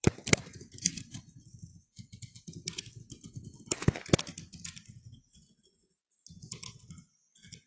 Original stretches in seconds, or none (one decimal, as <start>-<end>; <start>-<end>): 1.2-7.7